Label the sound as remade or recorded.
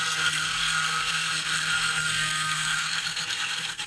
remade